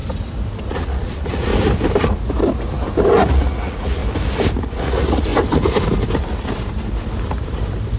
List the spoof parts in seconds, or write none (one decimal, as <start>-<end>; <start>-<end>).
0.7-1.5; 3.3-4.0; 4.6-5.3